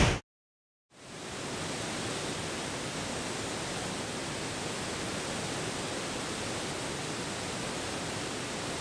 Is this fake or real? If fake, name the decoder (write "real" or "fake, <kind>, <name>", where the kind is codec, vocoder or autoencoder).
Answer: real